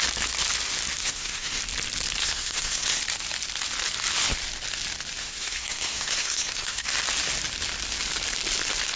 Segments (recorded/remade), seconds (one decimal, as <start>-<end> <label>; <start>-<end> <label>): 0.0-1.0 recorded; 1.0-1.6 remade; 1.6-2.2 recorded; 2.2-3.0 remade; 3.0-5.2 recorded; 5.2-6.9 remade; 6.9-9.0 recorded